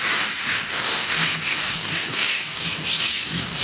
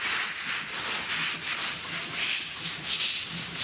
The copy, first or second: first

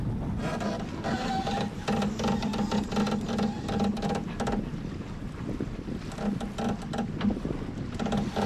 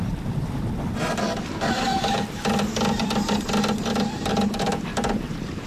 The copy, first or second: second